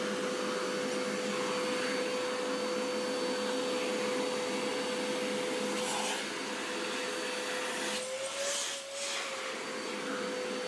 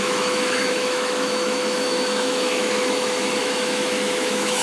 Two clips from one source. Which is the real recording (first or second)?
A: first